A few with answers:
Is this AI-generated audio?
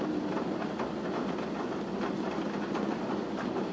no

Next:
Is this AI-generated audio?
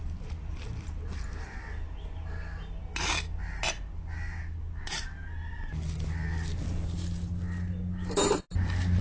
no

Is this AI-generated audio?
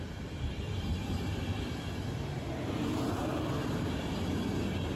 no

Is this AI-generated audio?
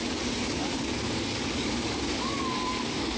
yes